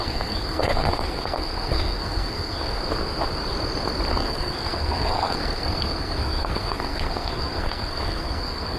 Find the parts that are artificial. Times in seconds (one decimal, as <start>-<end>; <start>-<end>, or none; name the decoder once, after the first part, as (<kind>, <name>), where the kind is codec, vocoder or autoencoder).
0.0-2.8 (codec, SNAC); 4.1-8.8